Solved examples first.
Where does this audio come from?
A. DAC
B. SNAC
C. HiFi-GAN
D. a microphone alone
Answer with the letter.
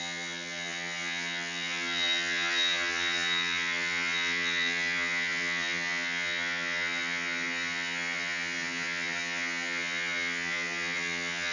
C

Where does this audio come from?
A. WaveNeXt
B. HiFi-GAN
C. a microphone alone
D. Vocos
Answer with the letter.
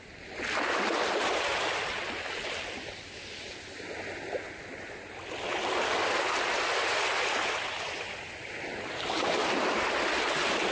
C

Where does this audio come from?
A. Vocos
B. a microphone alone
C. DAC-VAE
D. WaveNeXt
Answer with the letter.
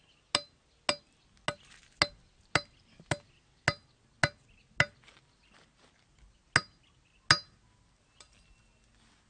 B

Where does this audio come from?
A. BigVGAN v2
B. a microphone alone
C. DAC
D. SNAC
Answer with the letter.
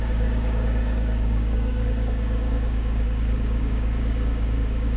C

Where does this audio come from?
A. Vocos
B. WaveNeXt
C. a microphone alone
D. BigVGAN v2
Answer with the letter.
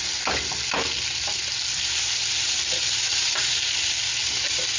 C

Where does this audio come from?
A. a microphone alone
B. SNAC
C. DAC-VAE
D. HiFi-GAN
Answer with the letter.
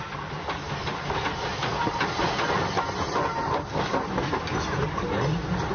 A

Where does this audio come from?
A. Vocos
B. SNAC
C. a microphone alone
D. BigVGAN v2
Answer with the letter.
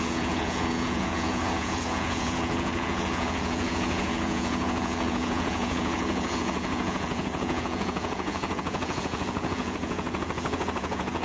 A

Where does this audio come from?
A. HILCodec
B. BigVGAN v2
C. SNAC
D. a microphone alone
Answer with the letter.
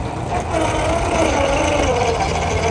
D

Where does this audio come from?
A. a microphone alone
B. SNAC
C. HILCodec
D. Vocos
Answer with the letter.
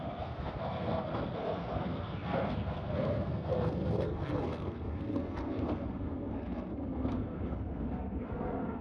B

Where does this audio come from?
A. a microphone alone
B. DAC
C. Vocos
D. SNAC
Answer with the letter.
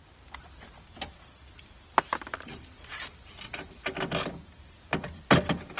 A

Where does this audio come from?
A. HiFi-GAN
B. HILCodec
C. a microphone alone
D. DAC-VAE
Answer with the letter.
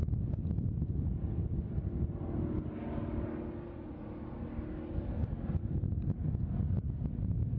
C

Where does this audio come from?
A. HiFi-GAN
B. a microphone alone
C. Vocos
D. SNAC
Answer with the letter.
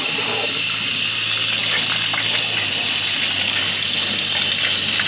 B